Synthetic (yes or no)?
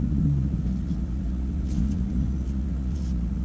yes